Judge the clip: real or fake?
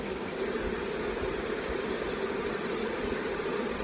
real